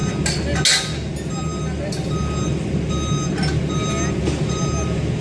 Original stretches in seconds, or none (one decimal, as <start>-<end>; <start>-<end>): 0.0-5.2